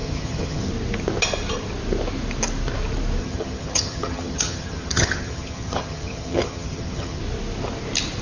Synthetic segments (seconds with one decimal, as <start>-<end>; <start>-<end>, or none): 0.0-0.7; 3.2-7.2